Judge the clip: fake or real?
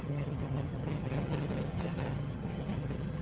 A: fake